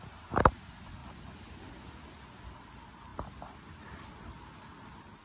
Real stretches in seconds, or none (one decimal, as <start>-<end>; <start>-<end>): 0.0-1.0; 1.5-5.2